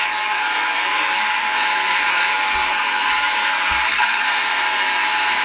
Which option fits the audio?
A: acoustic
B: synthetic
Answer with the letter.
B